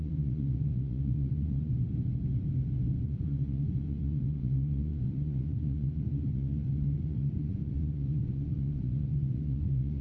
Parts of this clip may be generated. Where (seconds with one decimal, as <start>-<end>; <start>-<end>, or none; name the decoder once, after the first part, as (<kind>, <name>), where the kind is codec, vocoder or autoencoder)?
0.0-1.7 (vocoder, Vocos); 3.0-10.0

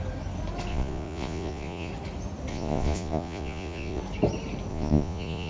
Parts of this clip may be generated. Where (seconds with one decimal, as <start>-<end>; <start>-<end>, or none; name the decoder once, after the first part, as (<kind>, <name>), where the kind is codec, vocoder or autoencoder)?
0.7-1.9 (vocoder, Vocos); 2.5-4.0; 4.7-5.5

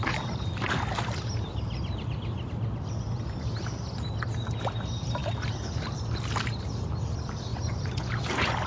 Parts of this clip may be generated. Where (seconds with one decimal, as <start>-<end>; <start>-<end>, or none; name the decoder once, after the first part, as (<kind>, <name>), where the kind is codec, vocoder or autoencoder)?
7.5-8.1 (vocoder, Vocos)

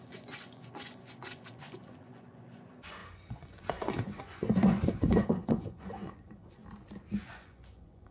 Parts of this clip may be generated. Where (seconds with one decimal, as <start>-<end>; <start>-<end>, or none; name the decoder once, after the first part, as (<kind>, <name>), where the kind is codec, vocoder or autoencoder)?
0.0-6.6 (vocoder, Vocos); 7.2-8.1

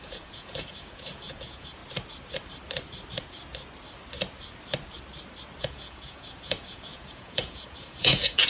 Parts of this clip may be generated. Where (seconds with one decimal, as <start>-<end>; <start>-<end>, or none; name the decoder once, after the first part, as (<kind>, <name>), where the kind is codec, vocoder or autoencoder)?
0.0-1.8 (vocoder, Vocos); 5.6-8.5

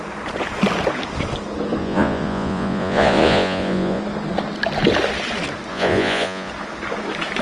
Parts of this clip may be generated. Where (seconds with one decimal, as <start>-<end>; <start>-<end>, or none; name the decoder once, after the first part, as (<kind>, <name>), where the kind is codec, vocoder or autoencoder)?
1.8-4.0 (vocoder, Vocos); 5.7-6.5

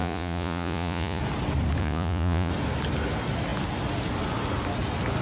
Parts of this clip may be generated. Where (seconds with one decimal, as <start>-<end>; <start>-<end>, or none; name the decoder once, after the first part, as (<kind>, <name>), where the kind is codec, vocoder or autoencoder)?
0.0-1.2 (vocoder, Vocos); 1.8-2.5

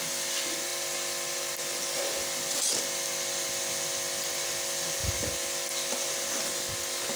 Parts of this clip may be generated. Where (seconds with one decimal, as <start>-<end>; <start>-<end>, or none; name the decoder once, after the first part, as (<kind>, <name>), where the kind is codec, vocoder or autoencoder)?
none